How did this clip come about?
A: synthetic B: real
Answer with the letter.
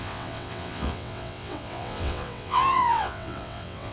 A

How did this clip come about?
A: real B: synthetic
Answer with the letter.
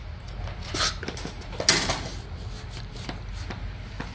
A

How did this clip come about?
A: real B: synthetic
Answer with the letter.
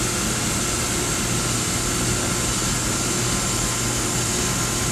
A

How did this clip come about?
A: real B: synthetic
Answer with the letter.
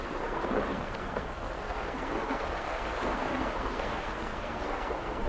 B